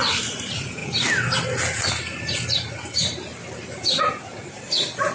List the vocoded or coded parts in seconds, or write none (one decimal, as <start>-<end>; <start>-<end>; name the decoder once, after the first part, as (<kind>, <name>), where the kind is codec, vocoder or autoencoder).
none